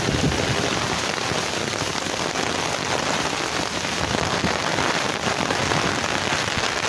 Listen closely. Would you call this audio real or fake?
fake